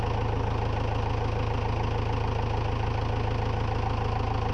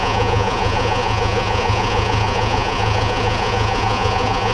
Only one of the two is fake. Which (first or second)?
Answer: second